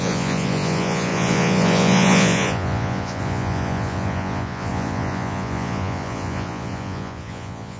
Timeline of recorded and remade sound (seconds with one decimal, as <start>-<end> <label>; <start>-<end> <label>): 0.0-7.8 remade